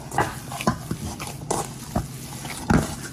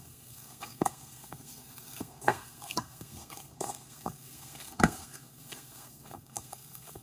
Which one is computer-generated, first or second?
second